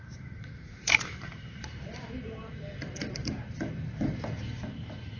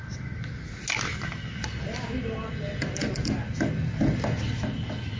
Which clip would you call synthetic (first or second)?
first